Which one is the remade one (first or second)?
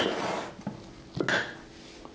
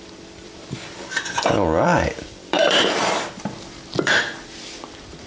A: second